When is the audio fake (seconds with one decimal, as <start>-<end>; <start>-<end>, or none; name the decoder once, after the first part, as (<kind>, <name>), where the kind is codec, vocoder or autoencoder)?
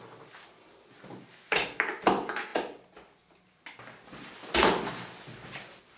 none